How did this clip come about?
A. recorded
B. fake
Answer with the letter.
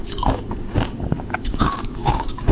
B